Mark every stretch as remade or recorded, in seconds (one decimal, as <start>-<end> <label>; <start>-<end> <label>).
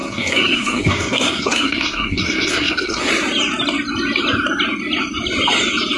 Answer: 0.0-3.1 remade; 3.1-6.0 recorded